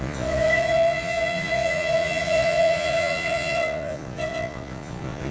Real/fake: fake